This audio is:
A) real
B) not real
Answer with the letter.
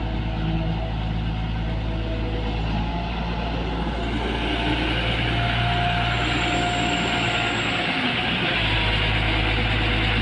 A